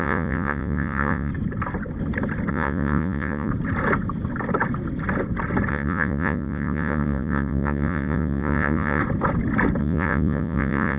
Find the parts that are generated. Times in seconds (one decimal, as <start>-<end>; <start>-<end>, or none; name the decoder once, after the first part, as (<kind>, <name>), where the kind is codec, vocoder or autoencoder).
0.0-1.3 (vocoder, Vocos); 2.5-3.5; 5.7-9.0; 9.8-11.0